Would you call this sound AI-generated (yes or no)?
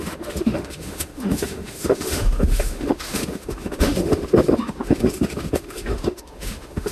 yes